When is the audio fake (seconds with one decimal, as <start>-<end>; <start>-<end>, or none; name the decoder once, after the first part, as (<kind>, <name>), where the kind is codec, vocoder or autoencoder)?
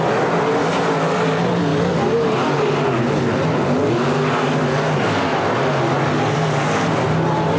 none